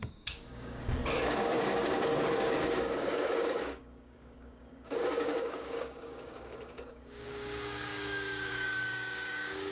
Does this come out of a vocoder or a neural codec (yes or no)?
yes